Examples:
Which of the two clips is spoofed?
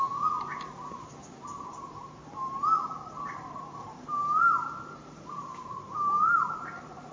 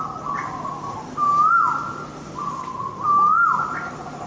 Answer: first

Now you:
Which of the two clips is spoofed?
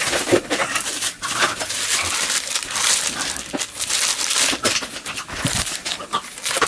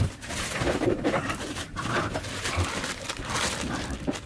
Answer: second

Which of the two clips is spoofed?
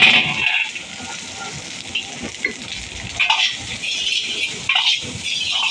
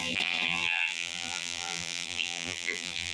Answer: second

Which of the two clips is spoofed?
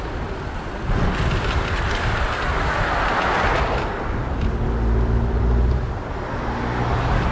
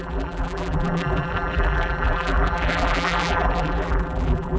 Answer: second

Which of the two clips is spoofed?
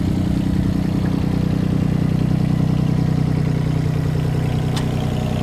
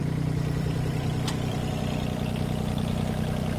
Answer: second